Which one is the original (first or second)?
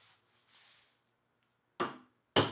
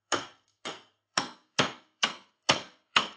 first